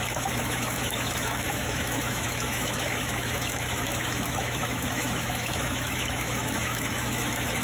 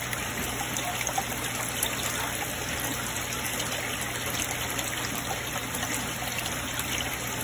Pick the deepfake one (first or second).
first